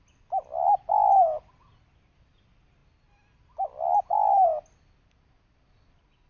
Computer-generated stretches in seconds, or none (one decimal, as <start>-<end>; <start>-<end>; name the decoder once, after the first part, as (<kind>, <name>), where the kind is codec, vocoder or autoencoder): none